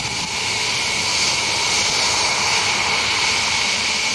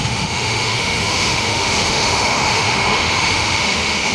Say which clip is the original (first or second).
first